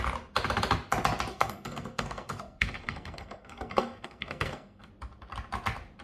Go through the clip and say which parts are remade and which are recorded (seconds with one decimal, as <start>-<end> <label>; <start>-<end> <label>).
0.0-1.3 recorded; 1.3-4.9 remade; 4.9-6.0 recorded